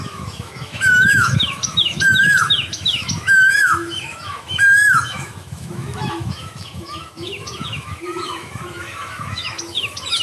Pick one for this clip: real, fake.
fake